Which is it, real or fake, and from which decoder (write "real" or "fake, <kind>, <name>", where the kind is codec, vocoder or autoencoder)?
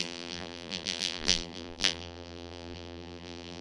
fake, vocoder, BigVGAN v2